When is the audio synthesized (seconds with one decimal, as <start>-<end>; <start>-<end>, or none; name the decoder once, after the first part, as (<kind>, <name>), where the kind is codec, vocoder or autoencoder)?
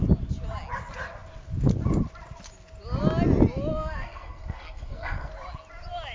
3.7-5.3 (codec, SNAC)